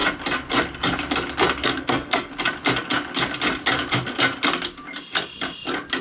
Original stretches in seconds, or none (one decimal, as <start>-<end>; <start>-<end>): 0.0-1.6; 2.3-6.0